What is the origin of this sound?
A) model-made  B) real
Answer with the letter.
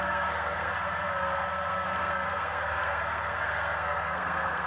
A